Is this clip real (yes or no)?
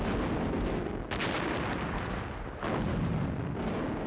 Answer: yes